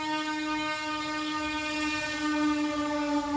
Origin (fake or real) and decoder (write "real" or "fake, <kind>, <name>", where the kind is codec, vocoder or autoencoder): fake, codec, DAC